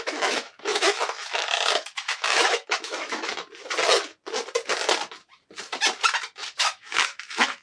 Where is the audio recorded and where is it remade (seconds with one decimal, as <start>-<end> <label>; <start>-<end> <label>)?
0.0-3.3 remade; 3.3-6.6 recorded; 6.6-7.6 remade